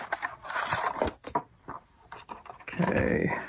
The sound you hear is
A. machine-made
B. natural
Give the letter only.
B